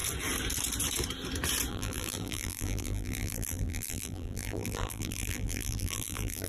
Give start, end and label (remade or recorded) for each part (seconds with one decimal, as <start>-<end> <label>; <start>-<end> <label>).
0.0-1.7 recorded; 1.7-6.5 remade